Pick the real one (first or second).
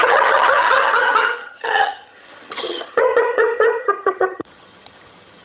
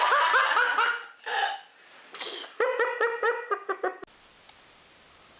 second